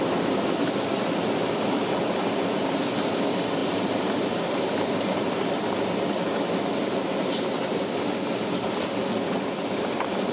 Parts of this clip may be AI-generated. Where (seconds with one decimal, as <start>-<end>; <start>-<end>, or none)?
3.6-5.4